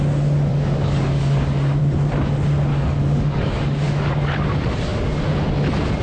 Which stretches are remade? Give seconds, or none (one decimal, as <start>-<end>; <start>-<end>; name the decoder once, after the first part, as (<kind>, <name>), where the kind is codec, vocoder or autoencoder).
0.5-1.8 (codec, DAC); 2.7-4.3